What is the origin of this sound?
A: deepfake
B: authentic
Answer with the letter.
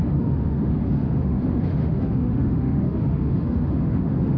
A